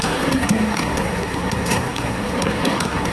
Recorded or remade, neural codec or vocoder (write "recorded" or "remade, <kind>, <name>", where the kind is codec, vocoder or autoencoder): remade, codec, SNAC